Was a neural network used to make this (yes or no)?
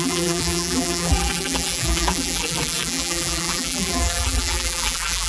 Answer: yes